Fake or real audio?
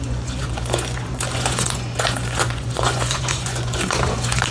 fake